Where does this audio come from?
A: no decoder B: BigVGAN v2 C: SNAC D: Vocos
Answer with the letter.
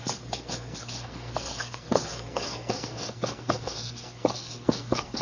C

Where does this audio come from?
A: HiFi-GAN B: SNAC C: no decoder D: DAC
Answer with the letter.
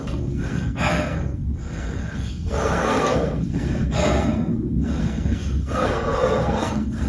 B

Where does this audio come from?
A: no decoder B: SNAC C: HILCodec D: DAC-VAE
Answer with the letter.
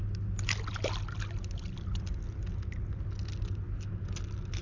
A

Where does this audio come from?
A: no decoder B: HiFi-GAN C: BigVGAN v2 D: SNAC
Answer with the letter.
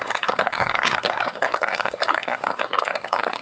D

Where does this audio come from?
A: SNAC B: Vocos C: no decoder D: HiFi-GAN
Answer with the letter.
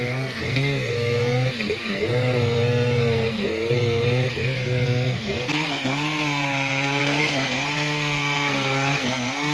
A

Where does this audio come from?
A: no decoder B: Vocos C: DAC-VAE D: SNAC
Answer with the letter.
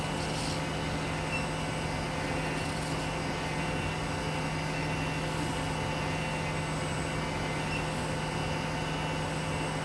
A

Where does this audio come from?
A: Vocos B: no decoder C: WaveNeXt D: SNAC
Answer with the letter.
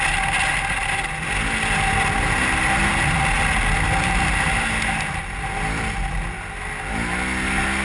B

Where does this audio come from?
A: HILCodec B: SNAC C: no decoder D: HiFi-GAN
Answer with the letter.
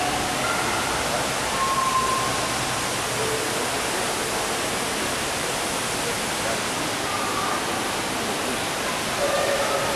C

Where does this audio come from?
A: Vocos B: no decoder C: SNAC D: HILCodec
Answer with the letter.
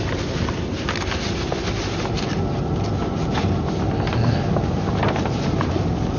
B